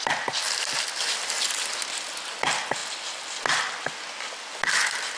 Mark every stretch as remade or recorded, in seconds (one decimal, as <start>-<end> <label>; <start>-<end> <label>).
0.0-5.2 recorded